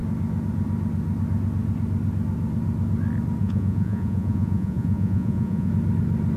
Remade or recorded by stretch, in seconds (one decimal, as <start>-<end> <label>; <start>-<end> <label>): 0.0-3.4 recorded; 3.4-5.7 remade; 5.7-6.4 recorded